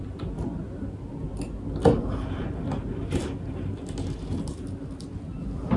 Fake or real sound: real